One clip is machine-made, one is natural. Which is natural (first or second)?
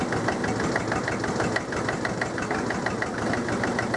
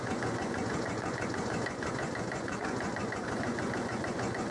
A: first